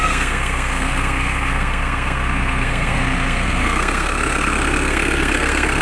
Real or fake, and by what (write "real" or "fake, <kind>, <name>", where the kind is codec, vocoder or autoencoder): fake, codec, SNAC